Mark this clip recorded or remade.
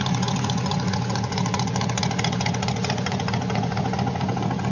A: remade